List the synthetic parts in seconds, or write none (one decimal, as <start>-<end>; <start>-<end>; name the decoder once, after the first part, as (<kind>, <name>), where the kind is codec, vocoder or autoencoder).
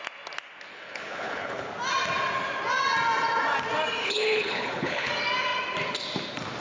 0.7-1.7 (codec, HILCodec); 4.0-5.1